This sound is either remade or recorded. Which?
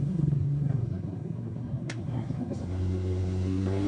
remade